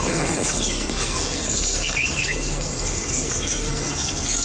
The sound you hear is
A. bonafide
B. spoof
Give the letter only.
B